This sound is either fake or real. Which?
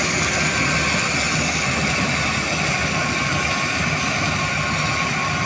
real